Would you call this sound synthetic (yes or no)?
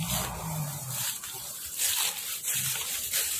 yes